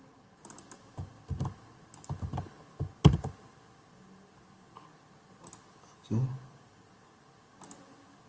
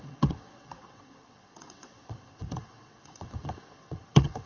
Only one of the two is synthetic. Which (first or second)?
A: second